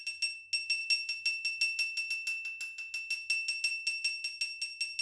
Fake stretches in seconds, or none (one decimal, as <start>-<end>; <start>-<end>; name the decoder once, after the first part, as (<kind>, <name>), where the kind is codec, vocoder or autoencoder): none